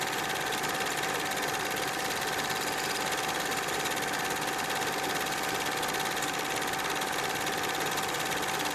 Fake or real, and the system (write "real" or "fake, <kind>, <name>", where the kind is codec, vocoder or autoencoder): real